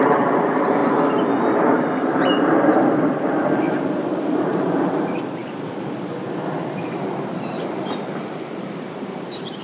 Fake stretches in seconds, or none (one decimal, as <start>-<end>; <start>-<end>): 0.0-0.8; 1.4-5.4; 6.8-9.6

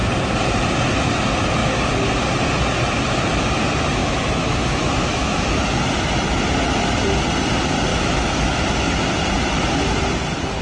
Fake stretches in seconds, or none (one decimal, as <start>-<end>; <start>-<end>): 4.0-5.6; 7.9-8.7

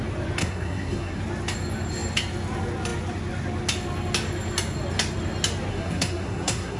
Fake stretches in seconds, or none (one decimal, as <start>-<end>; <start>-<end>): 0.4-1.2; 5.7-6.8